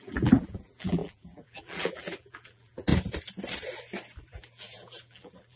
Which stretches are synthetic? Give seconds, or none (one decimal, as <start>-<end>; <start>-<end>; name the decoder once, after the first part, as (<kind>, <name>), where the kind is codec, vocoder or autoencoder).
0.0-2.9 (vocoder, BigVGAN v2); 4.3-5.6